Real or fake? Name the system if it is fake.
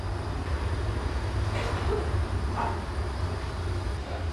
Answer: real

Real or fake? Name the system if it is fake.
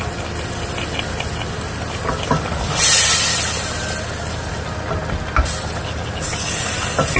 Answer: real